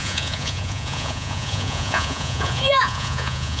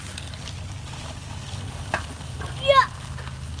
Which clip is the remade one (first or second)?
first